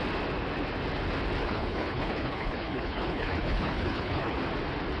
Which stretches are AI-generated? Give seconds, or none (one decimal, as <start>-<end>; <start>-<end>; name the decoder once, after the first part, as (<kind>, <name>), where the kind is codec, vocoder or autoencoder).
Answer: 1.4-4.4 (codec, HILCodec)